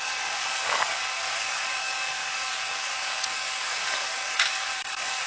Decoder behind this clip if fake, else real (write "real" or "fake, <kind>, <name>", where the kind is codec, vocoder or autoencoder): fake, codec, DAC